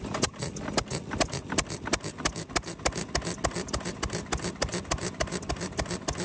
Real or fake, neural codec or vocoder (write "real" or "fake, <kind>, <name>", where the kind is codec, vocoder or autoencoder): real